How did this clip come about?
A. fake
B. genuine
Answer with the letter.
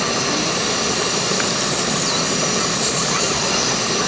B